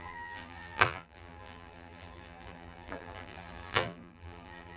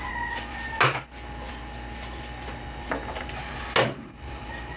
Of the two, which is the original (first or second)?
second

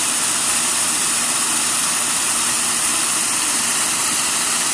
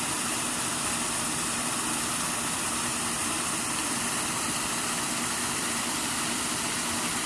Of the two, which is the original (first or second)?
second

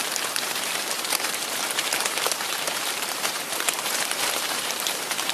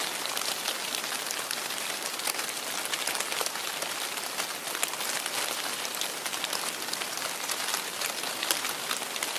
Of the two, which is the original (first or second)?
second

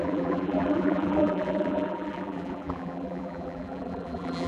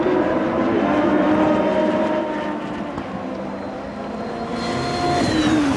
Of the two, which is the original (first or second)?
second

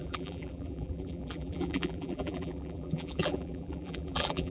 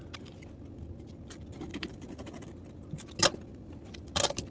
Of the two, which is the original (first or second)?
second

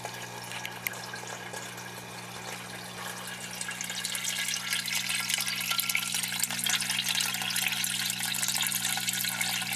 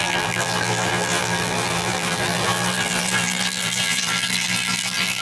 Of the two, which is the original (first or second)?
first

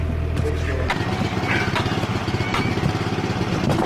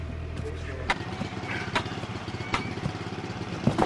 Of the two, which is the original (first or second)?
first